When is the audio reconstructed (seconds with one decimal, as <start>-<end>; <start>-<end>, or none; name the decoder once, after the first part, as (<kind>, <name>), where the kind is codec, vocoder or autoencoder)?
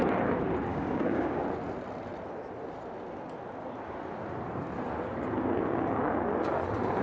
0.7-1.4 (codec, DAC)